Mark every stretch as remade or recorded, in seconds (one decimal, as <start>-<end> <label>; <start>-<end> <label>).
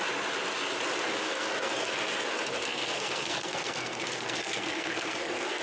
0.0-1.2 recorded; 1.2-1.9 remade; 1.9-2.5 recorded; 2.5-5.6 remade